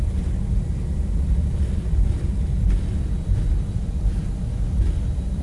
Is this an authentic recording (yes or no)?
yes